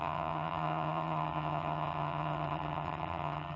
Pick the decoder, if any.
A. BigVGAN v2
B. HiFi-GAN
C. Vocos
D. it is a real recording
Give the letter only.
B